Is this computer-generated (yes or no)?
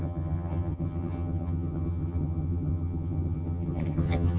yes